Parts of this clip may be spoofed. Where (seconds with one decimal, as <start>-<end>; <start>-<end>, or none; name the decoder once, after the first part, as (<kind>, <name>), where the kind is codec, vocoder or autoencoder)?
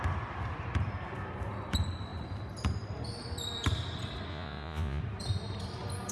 4.3-5.0 (vocoder, Vocos)